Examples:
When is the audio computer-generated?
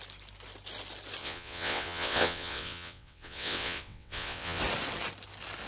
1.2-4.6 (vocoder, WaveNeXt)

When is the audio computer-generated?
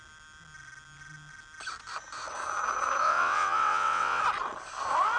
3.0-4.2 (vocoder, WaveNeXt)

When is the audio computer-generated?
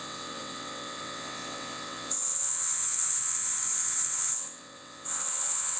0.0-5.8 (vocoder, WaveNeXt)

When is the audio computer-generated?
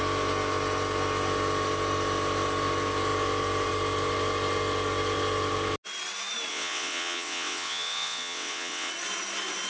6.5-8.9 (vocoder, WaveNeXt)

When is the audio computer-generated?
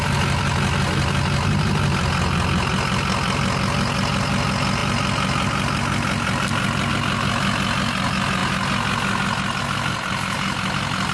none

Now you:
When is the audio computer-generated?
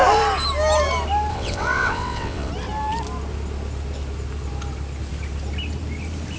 1.3-2.5 (vocoder, WaveNeXt)